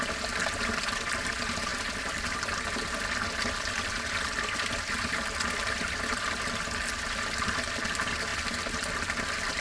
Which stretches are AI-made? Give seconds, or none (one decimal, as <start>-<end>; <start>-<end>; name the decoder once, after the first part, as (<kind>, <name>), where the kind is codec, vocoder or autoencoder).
0.0-8.3 (vocoder, BigVGAN v2); 9.2-9.6